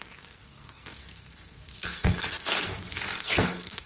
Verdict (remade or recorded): remade